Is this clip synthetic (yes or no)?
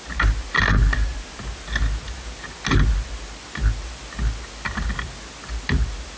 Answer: no